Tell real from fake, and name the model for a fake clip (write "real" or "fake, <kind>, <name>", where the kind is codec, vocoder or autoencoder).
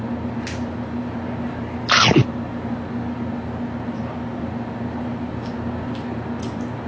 real